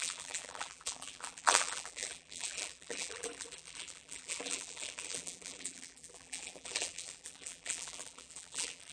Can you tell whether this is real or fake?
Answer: fake